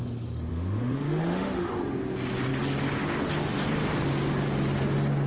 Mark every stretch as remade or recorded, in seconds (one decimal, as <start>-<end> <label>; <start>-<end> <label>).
0.0-0.5 recorded; 0.5-1.7 remade; 1.7-5.3 recorded